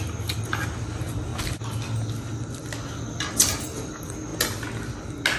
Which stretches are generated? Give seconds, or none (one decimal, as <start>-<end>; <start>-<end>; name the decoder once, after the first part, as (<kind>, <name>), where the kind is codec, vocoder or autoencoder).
none